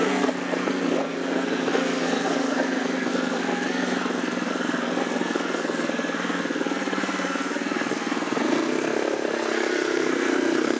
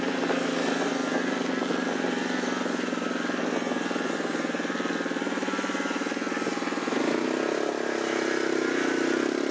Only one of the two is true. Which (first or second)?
second